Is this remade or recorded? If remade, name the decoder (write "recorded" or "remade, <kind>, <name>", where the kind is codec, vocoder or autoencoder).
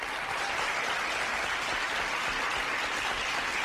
recorded